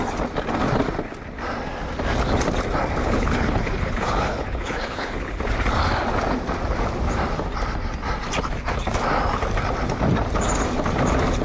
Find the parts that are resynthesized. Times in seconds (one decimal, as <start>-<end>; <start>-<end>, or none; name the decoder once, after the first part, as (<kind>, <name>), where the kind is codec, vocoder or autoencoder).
3.0-5.4 (codec, HILCodec)